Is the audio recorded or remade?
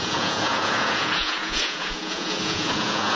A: remade